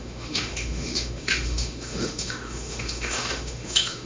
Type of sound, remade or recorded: remade